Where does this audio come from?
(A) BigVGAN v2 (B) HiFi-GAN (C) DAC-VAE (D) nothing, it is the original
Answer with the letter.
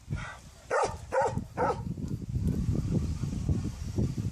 A